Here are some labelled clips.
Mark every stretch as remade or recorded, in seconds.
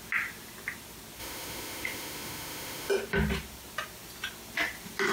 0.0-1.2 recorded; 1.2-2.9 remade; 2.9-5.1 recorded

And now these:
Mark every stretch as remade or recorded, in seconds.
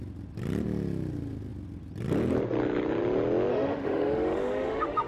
0.0-3.5 recorded; 3.5-5.1 remade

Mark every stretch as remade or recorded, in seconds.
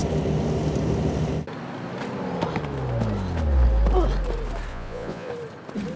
0.0-4.7 recorded; 4.7-5.3 remade; 5.3-6.0 recorded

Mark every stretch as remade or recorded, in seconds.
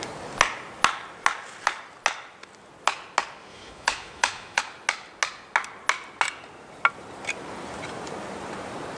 0.0-3.5 recorded; 3.5-4.6 remade; 4.6-9.0 recorded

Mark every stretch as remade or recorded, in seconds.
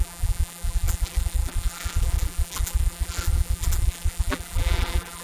0.0-5.2 remade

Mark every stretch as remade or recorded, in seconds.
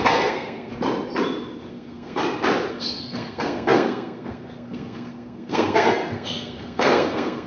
0.0-0.7 remade; 0.7-1.7 recorded; 1.7-2.2 remade; 2.2-2.7 recorded; 2.7-7.5 remade